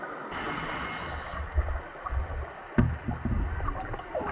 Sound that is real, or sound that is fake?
real